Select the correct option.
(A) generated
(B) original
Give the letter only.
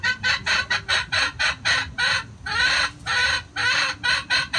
B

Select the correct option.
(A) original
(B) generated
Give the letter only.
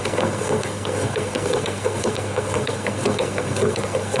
B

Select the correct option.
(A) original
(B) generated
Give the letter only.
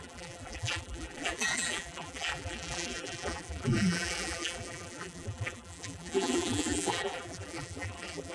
B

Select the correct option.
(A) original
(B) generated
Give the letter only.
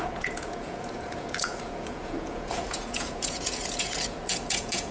B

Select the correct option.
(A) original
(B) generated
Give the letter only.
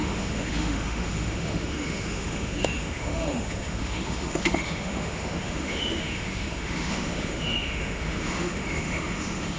B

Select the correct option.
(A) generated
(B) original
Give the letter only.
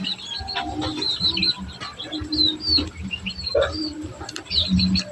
A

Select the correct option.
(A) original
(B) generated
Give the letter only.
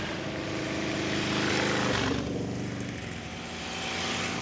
A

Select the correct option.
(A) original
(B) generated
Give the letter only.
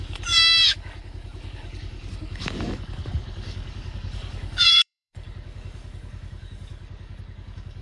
B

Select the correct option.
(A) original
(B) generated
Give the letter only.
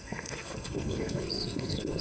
B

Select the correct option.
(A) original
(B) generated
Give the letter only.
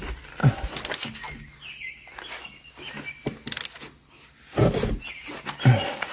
A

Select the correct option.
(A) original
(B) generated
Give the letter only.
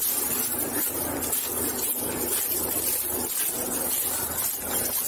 A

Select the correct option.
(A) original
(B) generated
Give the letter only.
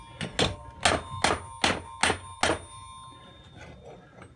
A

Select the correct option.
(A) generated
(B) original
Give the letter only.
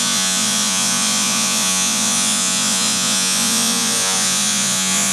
A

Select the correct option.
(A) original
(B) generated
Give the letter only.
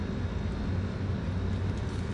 A